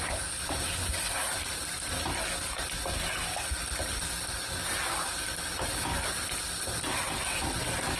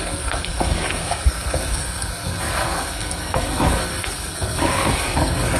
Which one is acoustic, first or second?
first